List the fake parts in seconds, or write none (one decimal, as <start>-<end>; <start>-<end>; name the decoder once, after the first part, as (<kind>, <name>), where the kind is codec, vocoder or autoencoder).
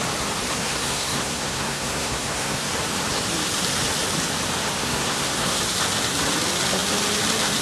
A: 0.6-2.7 (codec, SNAC); 4.8-5.6